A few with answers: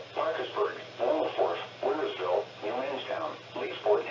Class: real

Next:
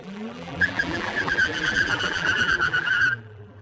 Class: fake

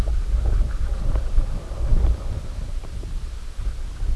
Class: real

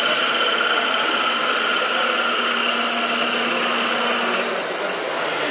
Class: real